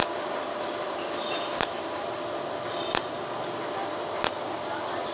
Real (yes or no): yes